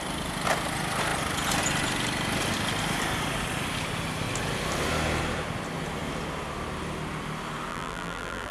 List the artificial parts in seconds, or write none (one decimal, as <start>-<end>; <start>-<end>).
7.7-8.5